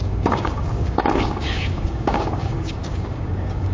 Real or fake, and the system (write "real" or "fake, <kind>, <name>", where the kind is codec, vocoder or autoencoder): fake, codec, DAC